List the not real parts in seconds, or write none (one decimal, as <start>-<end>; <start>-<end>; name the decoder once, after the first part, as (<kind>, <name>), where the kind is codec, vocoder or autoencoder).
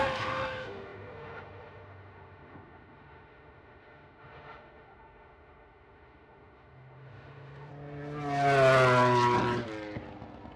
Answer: 0.0-7.7 (autoencoder, DAC-VAE)